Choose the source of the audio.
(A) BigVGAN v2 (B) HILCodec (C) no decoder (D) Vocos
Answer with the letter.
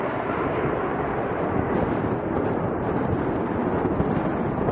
C